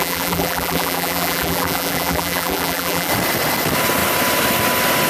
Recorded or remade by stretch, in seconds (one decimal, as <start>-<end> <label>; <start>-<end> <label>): 0.0-3.1 remade; 3.1-5.1 recorded